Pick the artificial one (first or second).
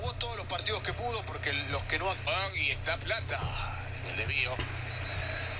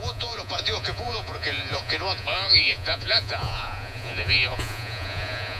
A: second